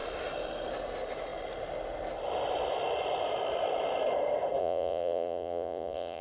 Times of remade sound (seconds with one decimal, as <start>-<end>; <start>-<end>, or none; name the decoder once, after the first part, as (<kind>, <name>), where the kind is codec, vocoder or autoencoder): 4.6-6.2 (vocoder, Vocos)